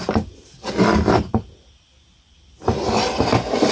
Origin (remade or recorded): recorded